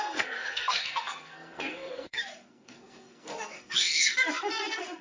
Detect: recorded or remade remade